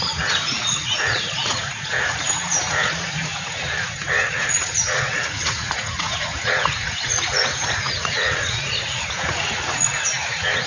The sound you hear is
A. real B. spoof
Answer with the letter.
B